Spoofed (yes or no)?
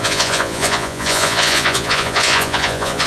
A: yes